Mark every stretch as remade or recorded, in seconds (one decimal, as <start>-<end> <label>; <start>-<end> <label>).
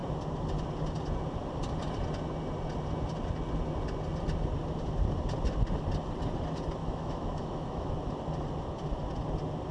0.0-6.8 recorded; 6.8-7.9 remade; 7.9-9.7 recorded